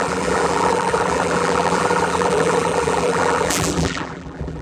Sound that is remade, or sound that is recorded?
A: remade